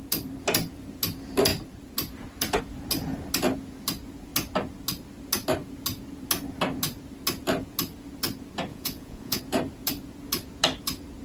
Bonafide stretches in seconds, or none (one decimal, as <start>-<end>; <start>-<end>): 0.0-8.7; 9.4-11.2